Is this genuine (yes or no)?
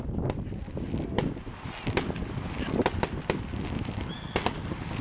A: yes